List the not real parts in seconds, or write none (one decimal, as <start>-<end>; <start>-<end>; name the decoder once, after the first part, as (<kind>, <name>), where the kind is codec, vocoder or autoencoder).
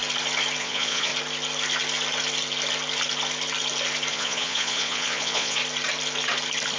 0.6-1.1 (vocoder, Vocos); 4.1-5.6